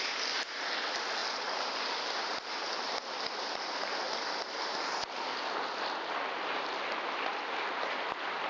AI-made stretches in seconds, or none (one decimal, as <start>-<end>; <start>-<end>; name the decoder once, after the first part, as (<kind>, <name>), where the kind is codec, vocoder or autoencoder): none